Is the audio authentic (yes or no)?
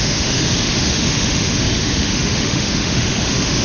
no